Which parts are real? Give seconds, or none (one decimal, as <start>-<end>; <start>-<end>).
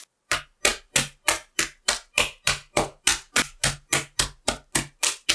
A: 0.0-5.3